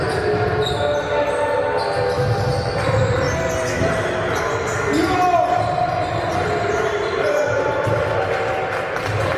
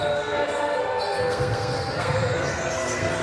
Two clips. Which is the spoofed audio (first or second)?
second